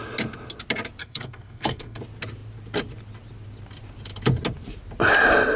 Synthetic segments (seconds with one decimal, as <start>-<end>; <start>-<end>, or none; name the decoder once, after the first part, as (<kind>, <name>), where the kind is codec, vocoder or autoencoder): 1.0-2.0 (codec, SNAC)